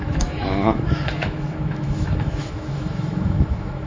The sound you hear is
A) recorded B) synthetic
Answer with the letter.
B